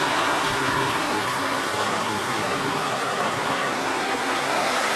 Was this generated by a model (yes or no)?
yes